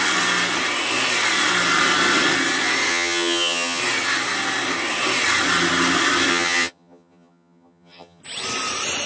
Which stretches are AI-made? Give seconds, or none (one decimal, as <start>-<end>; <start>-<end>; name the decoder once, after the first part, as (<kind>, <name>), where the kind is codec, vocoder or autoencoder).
2.9-3.8 (vocoder, HiFi-GAN); 6.3-8.2